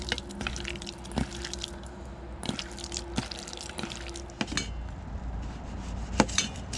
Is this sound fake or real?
real